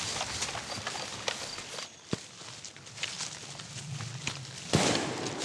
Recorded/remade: recorded